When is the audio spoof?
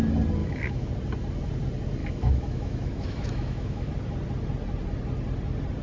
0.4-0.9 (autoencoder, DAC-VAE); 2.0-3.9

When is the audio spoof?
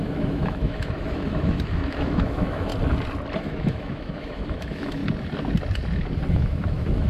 0.0-2.7 (autoencoder, DAC-VAE); 3.4-5.0; 6.3-7.1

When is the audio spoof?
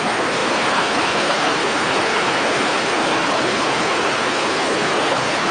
0.0-5.5 (codec, HILCodec)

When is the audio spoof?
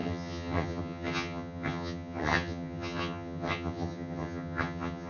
0.0-5.1 (vocoder, HiFi-GAN)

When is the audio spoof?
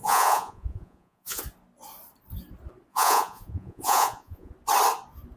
0.0-1.4 (vocoder, Vocos); 2.9-4.5